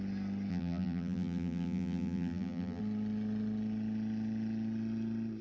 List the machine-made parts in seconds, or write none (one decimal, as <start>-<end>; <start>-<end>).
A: 0.5-2.8